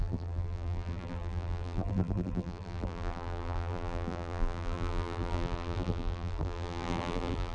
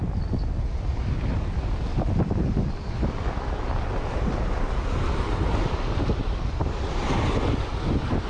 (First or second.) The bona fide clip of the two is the second